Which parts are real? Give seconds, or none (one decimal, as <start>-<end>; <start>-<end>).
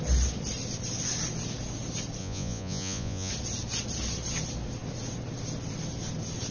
0.0-2.2; 3.3-6.5